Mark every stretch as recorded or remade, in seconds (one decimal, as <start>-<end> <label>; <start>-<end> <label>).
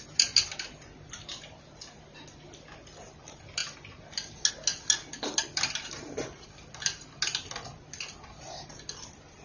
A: 0.0-9.4 recorded